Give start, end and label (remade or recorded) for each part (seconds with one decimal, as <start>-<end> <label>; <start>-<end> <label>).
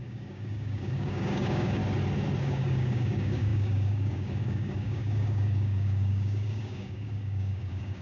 0.0-1.8 remade; 1.8-2.4 recorded; 2.4-8.0 remade